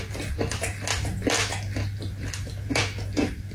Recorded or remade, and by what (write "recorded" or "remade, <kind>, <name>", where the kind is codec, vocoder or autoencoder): remade, vocoder, BigVGAN v2